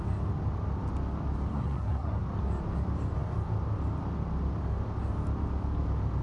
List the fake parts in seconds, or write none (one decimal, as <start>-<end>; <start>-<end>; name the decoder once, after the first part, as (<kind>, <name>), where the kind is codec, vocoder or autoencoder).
1.5-2.2 (codec, SNAC)